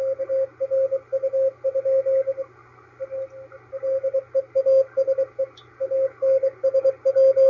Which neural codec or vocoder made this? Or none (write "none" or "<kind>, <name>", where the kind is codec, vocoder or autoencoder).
none